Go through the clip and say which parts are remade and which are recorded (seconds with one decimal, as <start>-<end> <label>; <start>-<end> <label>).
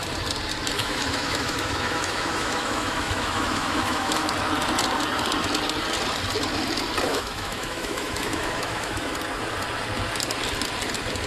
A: 0.0-0.8 recorded; 0.8-4.3 remade; 4.3-7.1 recorded; 7.1-9.1 remade; 9.1-11.3 recorded